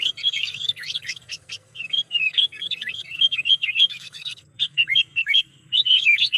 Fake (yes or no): yes